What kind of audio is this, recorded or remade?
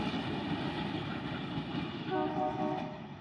recorded